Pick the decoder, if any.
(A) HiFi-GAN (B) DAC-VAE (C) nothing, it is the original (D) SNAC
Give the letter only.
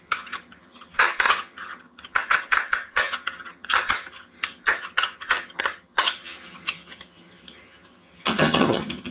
A